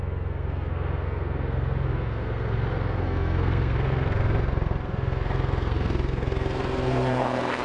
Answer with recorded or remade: remade